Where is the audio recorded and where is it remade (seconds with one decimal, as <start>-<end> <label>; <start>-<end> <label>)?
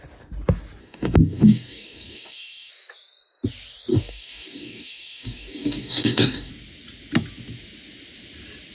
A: 0.0-0.8 recorded; 0.8-2.7 remade; 2.7-3.9 recorded; 3.9-6.5 remade; 6.5-8.7 recorded